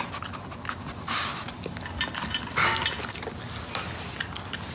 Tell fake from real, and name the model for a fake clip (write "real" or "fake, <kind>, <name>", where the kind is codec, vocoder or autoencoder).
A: real